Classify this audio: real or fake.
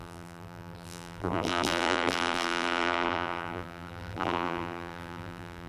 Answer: fake